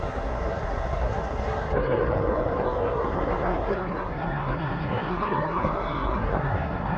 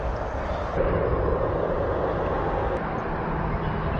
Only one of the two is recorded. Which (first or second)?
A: second